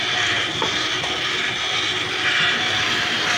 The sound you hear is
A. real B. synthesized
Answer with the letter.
A